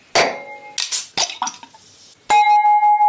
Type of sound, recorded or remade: recorded